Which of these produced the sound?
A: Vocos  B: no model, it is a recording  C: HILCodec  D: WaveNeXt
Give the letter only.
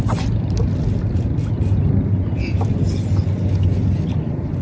B